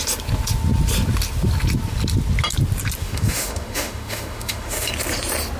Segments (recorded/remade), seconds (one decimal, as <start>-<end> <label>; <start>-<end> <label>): 0.0-3.0 recorded; 3.0-4.9 remade; 4.9-5.6 recorded